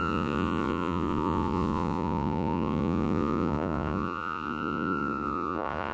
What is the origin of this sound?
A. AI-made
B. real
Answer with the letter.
A